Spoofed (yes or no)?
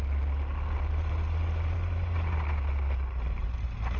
no